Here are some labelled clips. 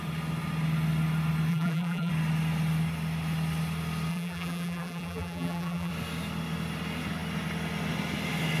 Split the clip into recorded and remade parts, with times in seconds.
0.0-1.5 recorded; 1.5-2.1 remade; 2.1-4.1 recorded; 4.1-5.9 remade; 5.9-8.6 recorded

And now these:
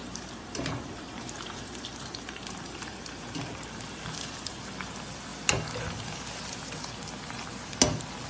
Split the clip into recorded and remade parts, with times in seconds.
0.0-4.4 remade; 4.4-8.3 recorded